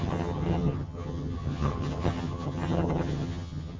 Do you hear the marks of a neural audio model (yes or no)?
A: yes